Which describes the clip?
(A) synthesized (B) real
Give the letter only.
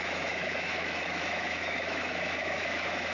A